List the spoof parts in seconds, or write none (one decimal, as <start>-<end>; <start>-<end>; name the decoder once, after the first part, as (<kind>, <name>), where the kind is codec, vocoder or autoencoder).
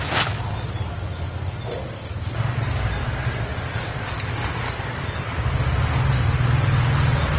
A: none